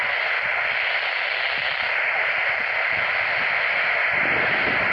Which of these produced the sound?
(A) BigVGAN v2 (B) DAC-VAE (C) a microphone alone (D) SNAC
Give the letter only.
C